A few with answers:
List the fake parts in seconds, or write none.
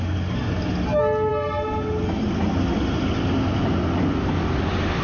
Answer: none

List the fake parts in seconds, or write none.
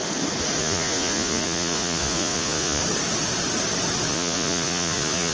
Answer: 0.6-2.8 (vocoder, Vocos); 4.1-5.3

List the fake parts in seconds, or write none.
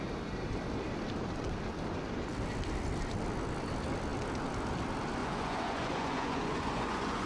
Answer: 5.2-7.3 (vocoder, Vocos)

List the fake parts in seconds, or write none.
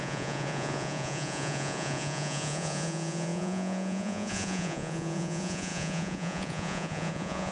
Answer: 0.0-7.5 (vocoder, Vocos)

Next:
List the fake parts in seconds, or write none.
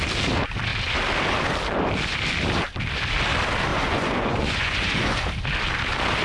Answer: 3.7-5.3 (vocoder, Vocos)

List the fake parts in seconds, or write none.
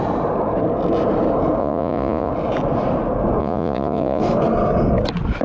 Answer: 1.6-2.3 (vocoder, Vocos); 3.4-4.2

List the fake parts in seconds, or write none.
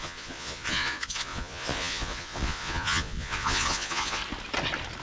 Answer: 0.0-4.2 (vocoder, Vocos)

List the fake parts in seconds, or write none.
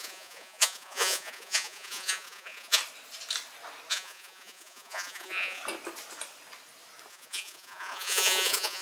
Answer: 0.0-2.8 (vocoder, Vocos); 3.9-5.6; 7.1-8.8